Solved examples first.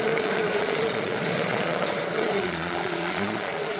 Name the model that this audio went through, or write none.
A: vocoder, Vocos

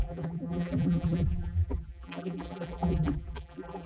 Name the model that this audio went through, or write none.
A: vocoder, BigVGAN v2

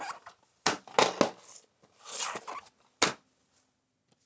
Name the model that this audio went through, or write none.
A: none